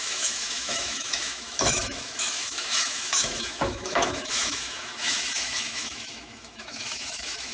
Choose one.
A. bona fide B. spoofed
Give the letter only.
B